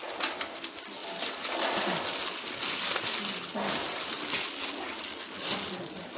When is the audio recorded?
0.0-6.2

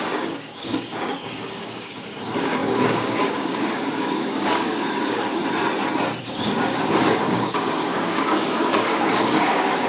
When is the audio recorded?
5.4-6.2